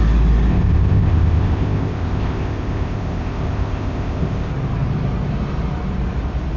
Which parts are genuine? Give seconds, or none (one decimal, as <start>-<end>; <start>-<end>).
0.0-0.5; 4.5-6.6